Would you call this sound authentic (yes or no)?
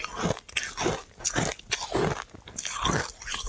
yes